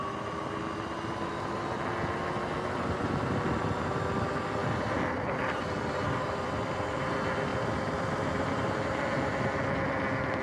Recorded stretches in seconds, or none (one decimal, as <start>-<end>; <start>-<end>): 0.0-10.4